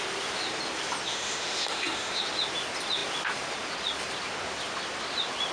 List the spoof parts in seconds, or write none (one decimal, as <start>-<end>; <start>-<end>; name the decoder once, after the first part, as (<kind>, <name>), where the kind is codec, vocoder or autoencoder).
1.1-2.2 (autoencoder, DAC-VAE)